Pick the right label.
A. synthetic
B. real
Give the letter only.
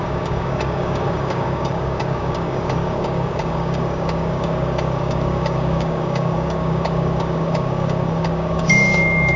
A